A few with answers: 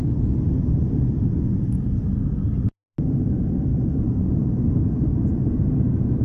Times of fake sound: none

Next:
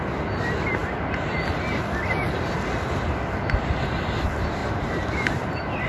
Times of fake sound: 4.6-5.3 (vocoder, BigVGAN v2)